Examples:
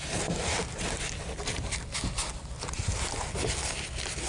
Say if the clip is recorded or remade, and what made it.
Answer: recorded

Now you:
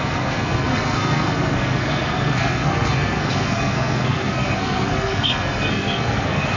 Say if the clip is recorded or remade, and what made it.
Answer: remade, codec, SNAC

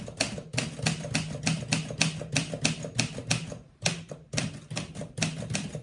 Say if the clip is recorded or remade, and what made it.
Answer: recorded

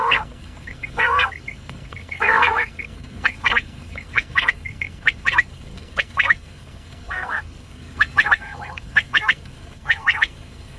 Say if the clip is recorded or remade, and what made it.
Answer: remade, codec, SNAC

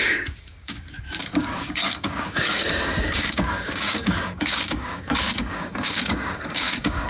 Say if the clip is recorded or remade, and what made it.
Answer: remade, codec, DAC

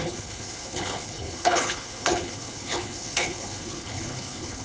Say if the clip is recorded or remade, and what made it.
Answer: remade, codec, HILCodec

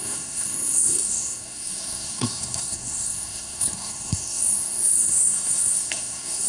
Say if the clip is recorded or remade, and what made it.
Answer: remade, codec, SNAC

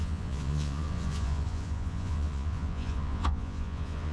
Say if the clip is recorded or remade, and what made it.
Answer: remade, vocoder, Vocos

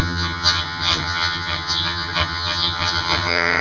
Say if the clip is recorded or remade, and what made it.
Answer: remade, vocoder, HiFi-GAN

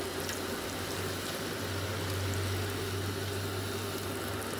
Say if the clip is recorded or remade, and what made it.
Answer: recorded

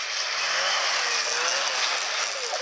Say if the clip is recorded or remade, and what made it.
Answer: recorded